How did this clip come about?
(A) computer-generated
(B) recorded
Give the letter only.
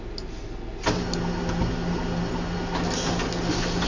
B